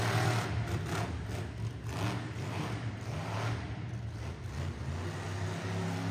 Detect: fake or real real